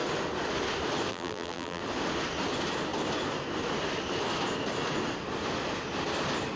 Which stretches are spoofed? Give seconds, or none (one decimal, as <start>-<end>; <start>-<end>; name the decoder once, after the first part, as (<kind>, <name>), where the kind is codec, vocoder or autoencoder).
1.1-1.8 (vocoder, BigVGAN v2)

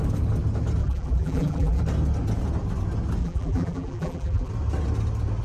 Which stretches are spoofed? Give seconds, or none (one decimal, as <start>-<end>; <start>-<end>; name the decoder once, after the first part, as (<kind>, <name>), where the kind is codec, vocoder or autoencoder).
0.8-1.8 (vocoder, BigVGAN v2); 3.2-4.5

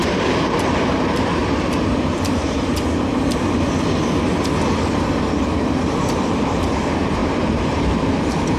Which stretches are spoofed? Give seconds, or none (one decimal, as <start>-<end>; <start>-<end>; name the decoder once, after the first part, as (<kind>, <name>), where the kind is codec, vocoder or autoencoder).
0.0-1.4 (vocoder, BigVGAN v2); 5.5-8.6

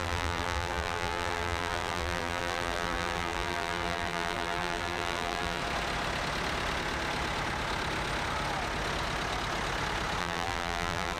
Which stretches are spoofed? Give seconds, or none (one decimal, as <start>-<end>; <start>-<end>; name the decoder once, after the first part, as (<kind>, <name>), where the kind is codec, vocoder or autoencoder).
0.0-5.6 (vocoder, BigVGAN v2); 10.2-11.2

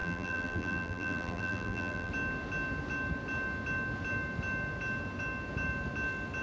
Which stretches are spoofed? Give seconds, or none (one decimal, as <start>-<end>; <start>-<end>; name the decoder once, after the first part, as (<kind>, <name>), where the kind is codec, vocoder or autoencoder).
0.0-2.1 (vocoder, BigVGAN v2)

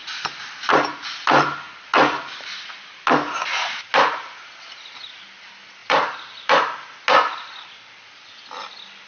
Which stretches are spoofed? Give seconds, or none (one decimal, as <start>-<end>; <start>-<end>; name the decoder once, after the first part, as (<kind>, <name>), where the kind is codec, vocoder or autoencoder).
5.8-7.0 (vocoder, BigVGAN v2)